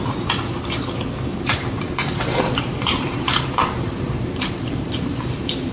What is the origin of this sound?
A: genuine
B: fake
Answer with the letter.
B